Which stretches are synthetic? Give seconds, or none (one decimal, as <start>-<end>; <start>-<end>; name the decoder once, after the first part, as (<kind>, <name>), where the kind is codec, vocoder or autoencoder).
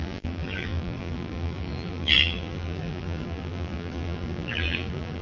0.0-5.2 (vocoder, BigVGAN v2)